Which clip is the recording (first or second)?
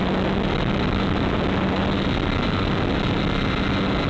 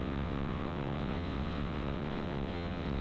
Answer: first